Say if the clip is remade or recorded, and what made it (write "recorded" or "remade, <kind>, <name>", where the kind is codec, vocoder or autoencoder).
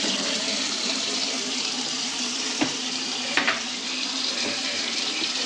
remade, vocoder, BigVGAN v2